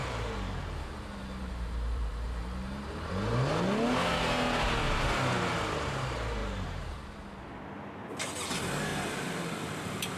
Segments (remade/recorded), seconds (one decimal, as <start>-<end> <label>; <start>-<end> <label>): 0.0-3.1 remade; 3.1-6.4 recorded; 6.4-7.0 remade; 7.0-8.9 recorded; 8.9-10.2 remade